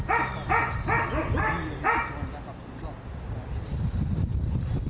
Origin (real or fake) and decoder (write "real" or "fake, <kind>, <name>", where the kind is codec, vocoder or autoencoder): real